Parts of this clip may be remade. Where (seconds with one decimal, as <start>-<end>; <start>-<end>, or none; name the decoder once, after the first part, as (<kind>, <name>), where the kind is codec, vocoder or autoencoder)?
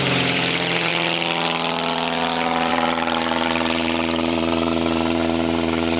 0.0-0.9 (vocoder, BigVGAN v2); 2.7-6.0